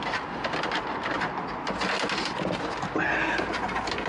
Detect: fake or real real